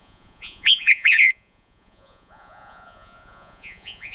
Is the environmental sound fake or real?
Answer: fake